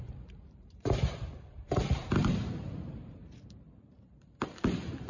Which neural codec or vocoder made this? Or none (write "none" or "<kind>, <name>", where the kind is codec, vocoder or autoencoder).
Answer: vocoder, BigVGAN v2